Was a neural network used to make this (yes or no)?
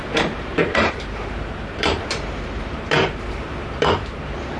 yes